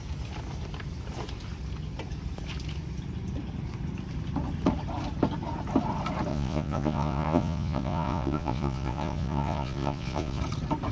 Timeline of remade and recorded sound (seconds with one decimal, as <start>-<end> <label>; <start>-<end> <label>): 0.0-6.3 recorded; 6.3-10.4 remade; 10.4-10.9 recorded